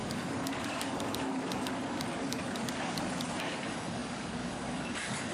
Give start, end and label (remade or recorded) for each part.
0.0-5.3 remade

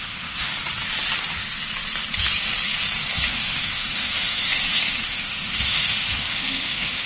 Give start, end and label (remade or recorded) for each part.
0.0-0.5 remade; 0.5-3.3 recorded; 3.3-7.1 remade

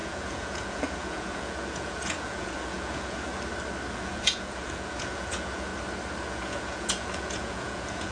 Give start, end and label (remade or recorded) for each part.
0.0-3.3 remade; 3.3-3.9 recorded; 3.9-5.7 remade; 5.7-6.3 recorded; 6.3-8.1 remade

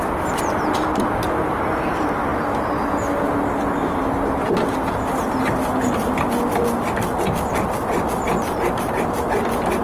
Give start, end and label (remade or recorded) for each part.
0.0-9.8 recorded

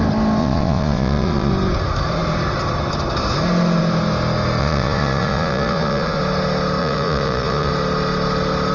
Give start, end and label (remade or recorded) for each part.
0.0-0.4 recorded; 0.4-1.5 remade; 1.5-4.6 recorded; 4.6-6.2 remade; 6.2-6.8 recorded; 6.8-7.7 remade; 7.7-8.7 recorded